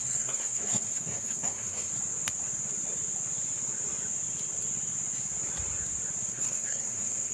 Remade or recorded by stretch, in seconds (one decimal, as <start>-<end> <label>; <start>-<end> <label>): 0.0-1.9 remade; 1.9-6.3 recorded; 6.3-7.3 remade